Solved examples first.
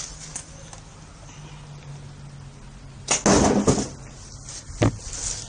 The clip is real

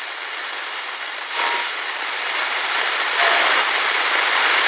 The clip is fake